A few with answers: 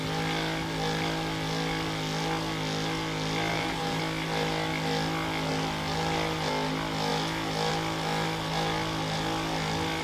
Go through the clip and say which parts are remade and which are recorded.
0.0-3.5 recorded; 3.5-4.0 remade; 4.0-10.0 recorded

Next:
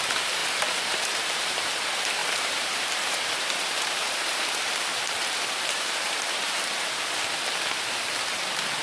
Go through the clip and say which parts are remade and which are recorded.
0.0-0.4 recorded; 0.4-1.7 remade; 1.7-2.2 recorded; 2.2-7.2 remade; 7.2-8.8 recorded

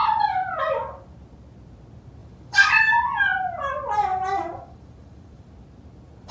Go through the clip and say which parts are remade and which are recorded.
0.0-2.2 recorded; 2.2-2.8 remade; 2.8-4.1 recorded; 4.1-5.5 remade; 5.5-6.3 recorded

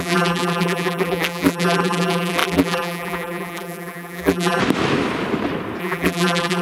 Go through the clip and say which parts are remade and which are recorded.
0.0-4.6 remade; 4.6-5.8 recorded; 5.8-6.6 remade

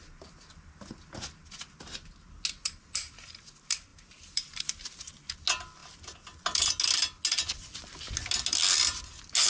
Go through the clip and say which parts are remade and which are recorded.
0.0-3.9 recorded; 3.9-5.1 remade; 5.1-9.5 recorded